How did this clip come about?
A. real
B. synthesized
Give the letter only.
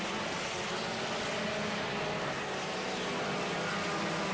A